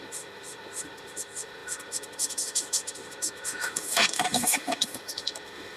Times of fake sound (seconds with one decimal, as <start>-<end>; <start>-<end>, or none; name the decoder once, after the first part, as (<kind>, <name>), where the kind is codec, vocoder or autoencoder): 0.0-5.8 (autoencoder, DAC-VAE)